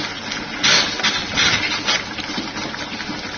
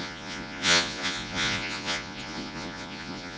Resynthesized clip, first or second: second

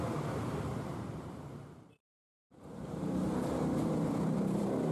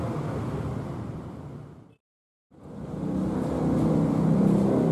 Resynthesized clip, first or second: first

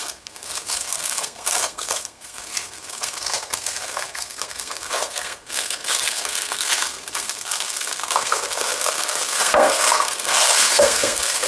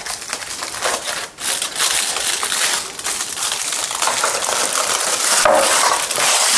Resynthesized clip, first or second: first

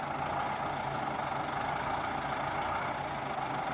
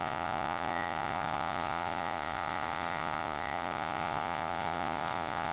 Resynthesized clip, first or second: second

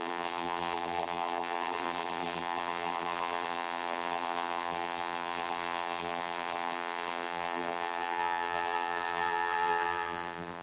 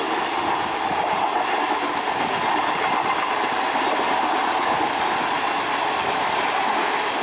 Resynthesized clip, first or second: first